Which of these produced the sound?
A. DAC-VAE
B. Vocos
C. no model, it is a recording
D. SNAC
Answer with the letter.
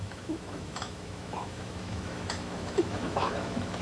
A